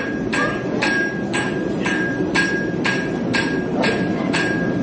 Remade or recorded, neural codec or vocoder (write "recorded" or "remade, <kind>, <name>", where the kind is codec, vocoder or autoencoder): remade, vocoder, BigVGAN v2